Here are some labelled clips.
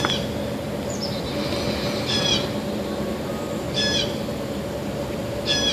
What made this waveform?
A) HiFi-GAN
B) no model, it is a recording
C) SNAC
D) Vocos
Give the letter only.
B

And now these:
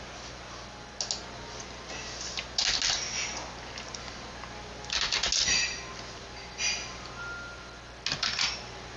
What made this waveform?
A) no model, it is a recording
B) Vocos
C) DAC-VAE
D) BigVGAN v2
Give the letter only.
A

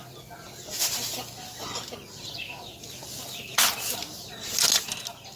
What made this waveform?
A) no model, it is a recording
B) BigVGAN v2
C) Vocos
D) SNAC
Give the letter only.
A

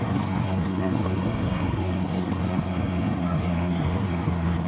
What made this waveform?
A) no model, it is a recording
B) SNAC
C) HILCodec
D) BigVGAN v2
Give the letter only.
B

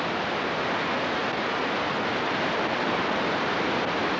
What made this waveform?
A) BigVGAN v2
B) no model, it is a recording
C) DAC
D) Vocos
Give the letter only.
B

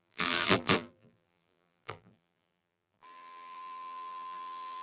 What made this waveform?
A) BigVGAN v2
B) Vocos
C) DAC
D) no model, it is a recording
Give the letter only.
A